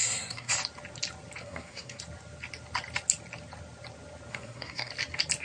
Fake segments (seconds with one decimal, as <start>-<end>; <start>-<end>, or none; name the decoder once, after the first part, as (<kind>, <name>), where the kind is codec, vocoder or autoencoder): 0.0-0.5 (codec, SNAC); 1.4-2.0; 4.3-4.9